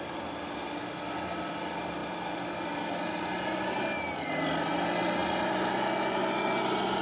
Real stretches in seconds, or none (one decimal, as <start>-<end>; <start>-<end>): 0.0-7.0